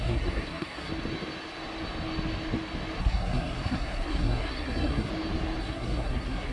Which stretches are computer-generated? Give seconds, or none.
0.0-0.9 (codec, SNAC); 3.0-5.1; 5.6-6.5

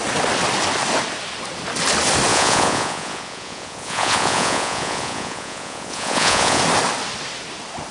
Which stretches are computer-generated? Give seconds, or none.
2.3-6.6 (vocoder, Vocos)

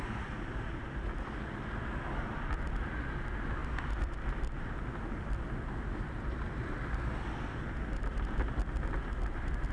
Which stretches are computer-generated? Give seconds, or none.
none

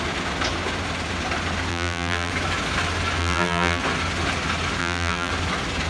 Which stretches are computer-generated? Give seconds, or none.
1.7-2.3 (vocoder, BigVGAN v2); 3.2-3.8; 4.8-5.3

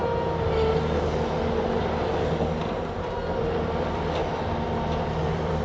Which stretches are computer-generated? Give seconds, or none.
3.4-5.6 (vocoder, BigVGAN v2)

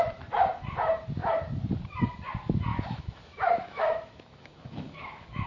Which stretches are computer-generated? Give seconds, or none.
2.7-5.5 (autoencoder, DAC-VAE)

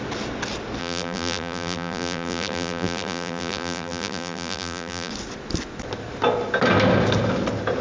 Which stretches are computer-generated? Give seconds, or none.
0.8-5.1 (vocoder, BigVGAN v2)